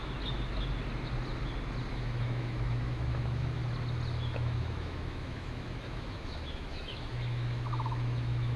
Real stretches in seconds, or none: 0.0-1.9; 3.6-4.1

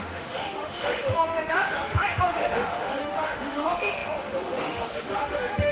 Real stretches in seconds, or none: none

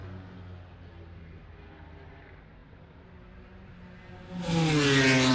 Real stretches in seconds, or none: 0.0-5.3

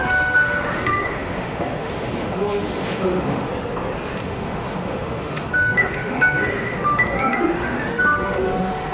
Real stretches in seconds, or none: 3.5-4.2

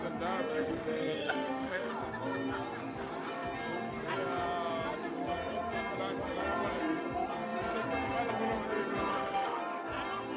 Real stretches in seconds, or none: 0.0-0.5; 1.9-9.1; 9.6-10.4

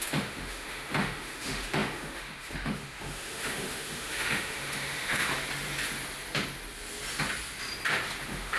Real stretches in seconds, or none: 5.3-8.2

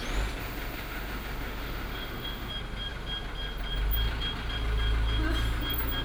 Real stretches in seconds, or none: 0.0-0.4; 2.5-6.0

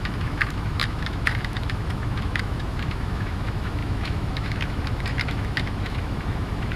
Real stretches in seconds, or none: none